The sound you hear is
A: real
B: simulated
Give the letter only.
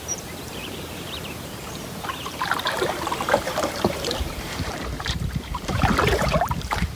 B